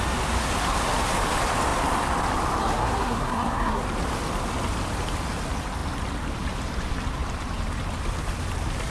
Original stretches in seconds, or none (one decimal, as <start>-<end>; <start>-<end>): 0.0-2.6; 3.8-8.9